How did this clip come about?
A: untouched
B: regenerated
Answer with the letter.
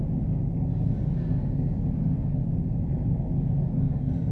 A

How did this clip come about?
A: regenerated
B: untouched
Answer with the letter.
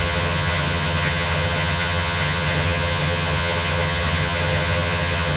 A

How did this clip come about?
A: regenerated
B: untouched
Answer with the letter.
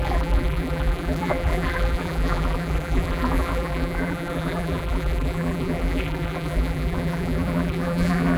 A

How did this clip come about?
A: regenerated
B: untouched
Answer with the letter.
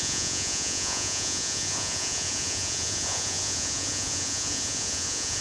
A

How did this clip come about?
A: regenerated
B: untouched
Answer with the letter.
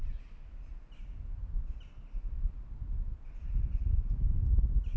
B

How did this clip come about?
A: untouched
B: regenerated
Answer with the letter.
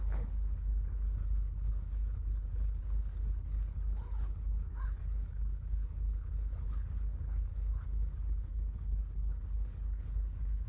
B